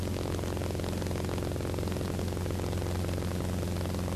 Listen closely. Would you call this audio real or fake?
real